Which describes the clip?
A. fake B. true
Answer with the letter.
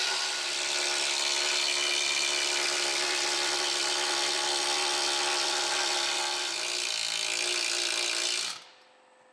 B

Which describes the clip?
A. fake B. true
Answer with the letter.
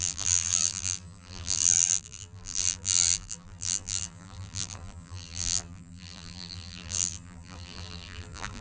A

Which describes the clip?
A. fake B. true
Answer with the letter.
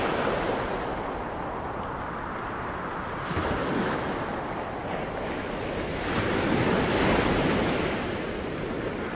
B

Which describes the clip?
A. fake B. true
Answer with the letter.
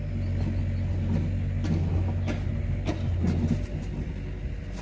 B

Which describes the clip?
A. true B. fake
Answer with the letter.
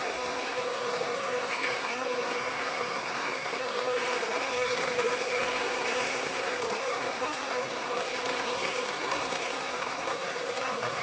B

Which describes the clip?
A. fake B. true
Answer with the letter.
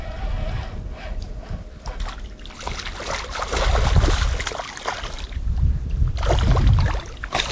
B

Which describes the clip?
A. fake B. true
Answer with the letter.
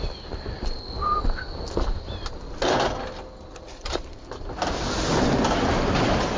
B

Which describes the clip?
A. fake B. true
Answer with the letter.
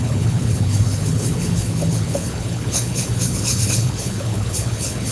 A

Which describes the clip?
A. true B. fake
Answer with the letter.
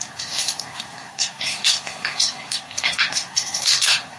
B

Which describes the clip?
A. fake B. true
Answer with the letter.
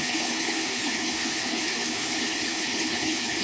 A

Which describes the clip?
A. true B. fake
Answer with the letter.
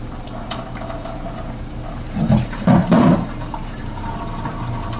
B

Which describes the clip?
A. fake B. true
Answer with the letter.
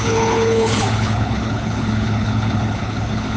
A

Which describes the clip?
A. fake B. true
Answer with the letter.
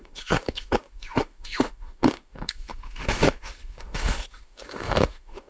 A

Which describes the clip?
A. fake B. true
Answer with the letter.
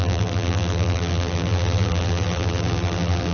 A